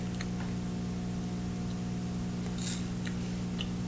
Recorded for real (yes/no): yes